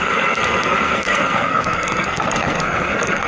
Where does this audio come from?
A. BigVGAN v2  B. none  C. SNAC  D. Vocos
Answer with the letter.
C